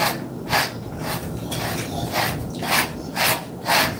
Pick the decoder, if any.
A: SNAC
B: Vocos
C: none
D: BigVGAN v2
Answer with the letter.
C